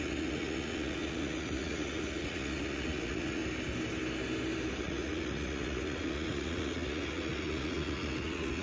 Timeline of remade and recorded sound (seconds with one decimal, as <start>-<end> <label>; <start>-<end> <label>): 0.0-3.4 remade; 3.4-4.8 recorded; 4.8-8.6 remade